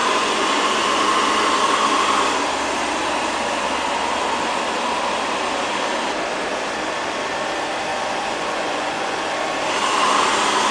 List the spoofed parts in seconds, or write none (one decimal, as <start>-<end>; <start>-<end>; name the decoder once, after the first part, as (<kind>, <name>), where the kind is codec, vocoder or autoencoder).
0.0-1.3 (vocoder, Vocos); 7.9-9.2